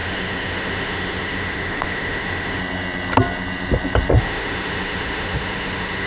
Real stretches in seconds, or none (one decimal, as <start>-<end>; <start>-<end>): 2.6-4.2